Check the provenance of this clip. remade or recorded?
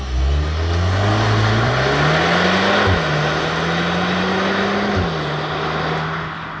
recorded